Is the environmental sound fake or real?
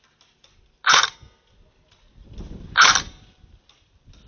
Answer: real